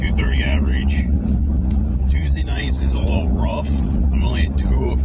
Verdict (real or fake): fake